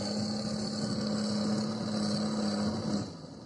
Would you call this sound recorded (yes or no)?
yes